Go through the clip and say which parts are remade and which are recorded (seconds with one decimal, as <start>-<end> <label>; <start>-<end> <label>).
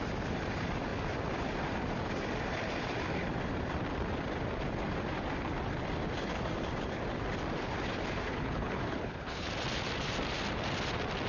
0.0-8.3 recorded; 8.3-9.5 remade; 9.5-11.3 recorded